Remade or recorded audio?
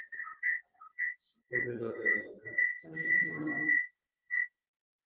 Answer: remade